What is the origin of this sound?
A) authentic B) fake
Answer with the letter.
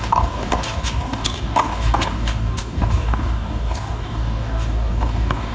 B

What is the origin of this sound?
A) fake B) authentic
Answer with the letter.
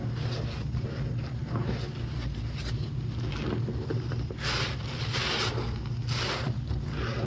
B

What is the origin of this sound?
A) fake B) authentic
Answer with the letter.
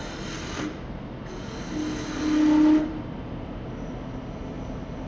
B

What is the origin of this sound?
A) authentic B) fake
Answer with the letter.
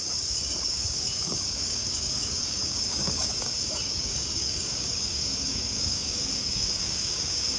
B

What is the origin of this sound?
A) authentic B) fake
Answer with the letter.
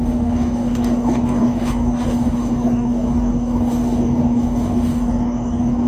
B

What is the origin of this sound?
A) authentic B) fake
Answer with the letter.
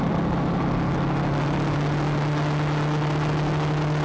A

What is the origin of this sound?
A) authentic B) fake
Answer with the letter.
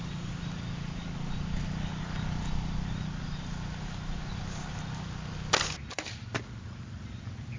A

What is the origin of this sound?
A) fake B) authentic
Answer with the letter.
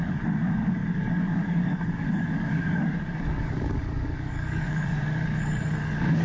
A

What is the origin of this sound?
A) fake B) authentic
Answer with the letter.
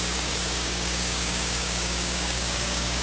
A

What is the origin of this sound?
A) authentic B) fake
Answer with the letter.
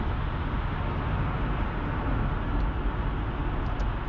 A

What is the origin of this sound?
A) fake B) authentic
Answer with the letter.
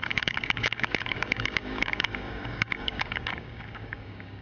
A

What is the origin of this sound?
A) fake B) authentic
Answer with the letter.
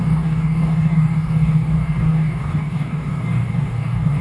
A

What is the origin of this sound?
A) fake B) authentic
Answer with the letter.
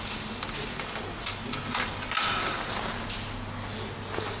B